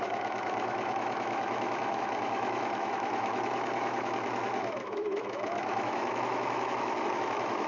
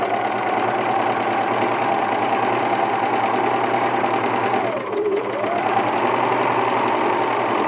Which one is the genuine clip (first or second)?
second